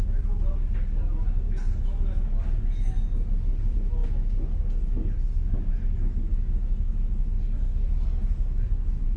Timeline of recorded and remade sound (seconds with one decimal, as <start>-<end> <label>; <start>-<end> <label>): 0.0-9.2 recorded